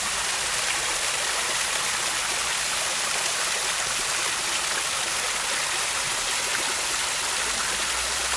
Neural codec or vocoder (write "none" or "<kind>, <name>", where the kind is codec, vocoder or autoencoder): none